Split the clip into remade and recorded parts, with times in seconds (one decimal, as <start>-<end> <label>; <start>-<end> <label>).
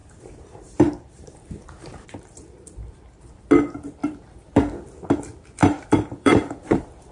0.0-3.4 remade; 3.4-4.0 recorded; 4.0-4.6 remade; 4.6-5.6 recorded; 5.6-7.1 remade